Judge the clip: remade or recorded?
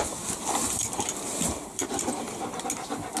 recorded